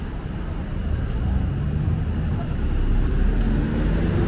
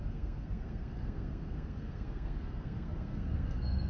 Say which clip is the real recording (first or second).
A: first